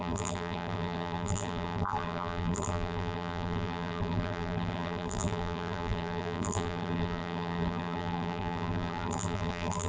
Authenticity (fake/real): fake